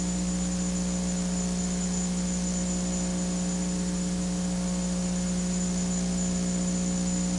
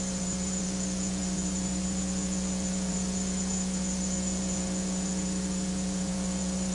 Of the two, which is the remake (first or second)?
second